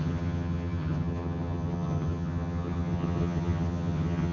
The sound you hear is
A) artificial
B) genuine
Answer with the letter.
A